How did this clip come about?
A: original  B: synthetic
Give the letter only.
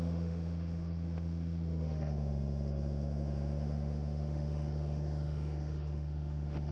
B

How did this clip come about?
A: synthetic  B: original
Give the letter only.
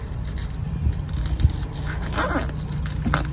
B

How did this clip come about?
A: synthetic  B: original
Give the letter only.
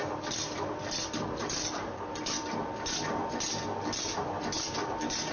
B